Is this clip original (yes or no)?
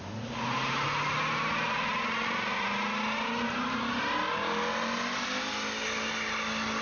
yes